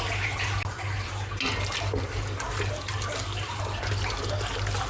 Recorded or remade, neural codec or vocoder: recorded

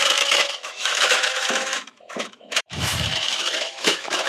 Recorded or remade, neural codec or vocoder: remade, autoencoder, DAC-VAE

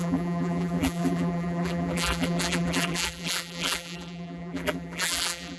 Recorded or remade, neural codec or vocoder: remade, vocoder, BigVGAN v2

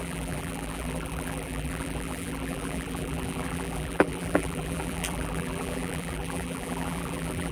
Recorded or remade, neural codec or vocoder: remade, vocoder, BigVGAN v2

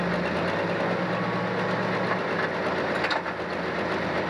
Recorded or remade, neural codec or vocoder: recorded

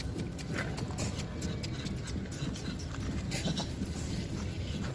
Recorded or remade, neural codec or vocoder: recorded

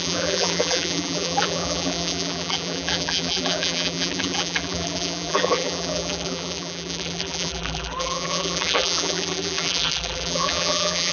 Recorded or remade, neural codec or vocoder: remade, vocoder, BigVGAN v2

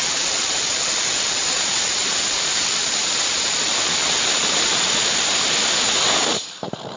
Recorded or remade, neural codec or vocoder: recorded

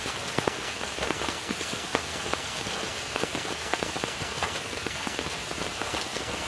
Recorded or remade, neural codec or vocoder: remade, codec, SNAC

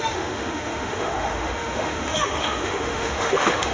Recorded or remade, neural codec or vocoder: remade, autoencoder, DAC-VAE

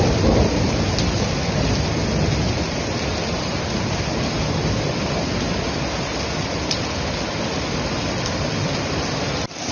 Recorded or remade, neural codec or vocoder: recorded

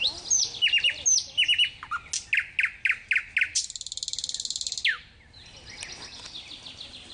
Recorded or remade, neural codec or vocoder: recorded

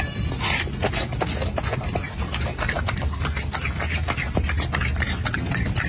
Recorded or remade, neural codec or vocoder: recorded